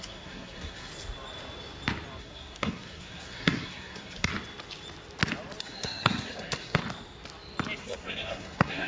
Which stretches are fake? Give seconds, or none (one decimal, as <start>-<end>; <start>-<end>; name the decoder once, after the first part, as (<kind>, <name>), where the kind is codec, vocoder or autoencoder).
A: 0.0-0.9 (codec, SNAC); 2.2-4.3; 5.6-6.8; 7.8-8.9